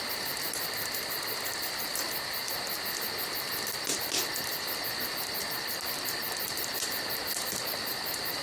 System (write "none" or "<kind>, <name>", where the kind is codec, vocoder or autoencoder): none